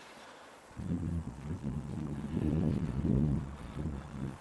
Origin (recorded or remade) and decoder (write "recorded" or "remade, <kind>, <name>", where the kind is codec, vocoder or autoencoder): remade, vocoder, Vocos